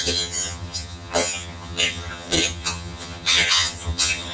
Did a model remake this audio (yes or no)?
yes